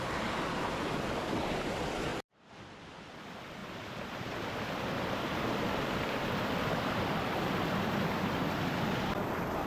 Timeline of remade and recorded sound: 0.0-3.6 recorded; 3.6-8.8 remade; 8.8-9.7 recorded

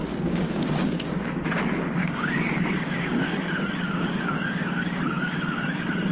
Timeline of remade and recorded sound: 0.0-1.4 remade; 1.4-2.0 recorded; 2.0-6.1 remade

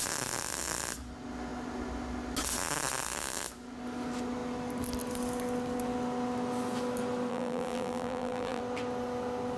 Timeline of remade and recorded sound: 0.0-7.3 recorded; 7.3-8.6 remade; 8.6-9.6 recorded

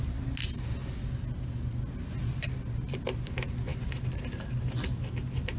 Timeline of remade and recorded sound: 0.0-2.2 recorded; 2.2-3.0 remade; 3.0-5.6 recorded

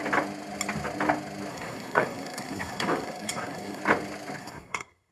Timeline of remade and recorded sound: 0.0-1.5 recorded; 1.5-3.8 remade; 3.8-4.4 recorded; 4.4-5.1 remade

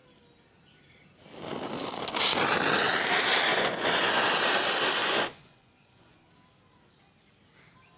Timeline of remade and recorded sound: 0.0-3.5 recorded; 3.5-4.2 remade; 4.2-5.0 recorded; 5.0-6.3 remade; 6.3-8.0 recorded

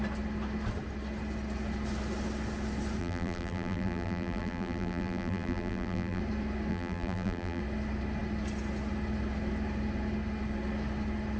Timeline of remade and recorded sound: 0.0-3.0 recorded; 3.0-6.2 remade; 6.2-6.7 recorded; 6.7-7.6 remade; 7.6-11.4 recorded

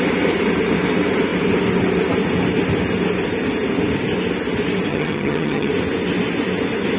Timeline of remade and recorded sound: 0.0-4.9 recorded; 4.9-5.7 remade; 5.7-7.0 recorded